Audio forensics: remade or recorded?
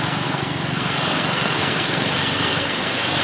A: remade